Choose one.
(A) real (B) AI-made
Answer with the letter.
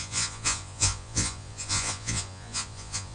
B